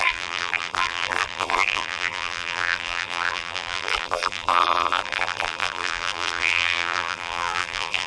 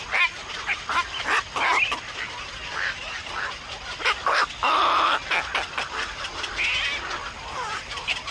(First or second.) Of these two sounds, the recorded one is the second